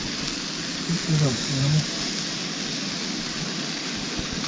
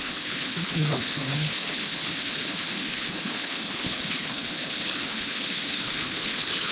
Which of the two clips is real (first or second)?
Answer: first